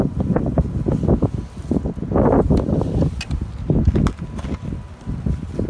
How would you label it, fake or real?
real